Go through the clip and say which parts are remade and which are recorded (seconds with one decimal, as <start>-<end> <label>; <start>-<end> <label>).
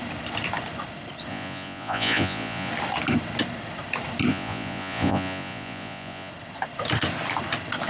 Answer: 0.0-1.3 recorded; 1.3-2.7 remade; 2.7-4.3 recorded; 4.3-6.3 remade; 6.3-7.9 recorded